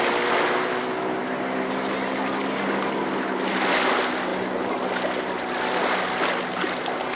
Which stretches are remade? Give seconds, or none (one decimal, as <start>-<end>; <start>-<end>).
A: none